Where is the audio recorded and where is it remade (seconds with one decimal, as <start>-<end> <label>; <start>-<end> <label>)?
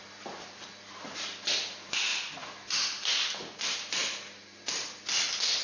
0.0-5.6 recorded